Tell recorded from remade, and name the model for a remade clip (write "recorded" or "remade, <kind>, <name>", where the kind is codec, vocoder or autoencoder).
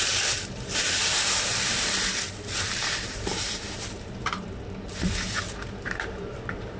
remade, vocoder, BigVGAN v2